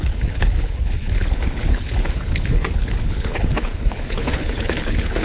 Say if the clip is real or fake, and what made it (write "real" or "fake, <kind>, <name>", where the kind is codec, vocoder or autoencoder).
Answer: fake, codec, HILCodec